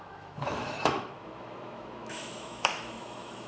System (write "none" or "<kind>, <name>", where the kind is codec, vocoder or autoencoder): autoencoder, DAC-VAE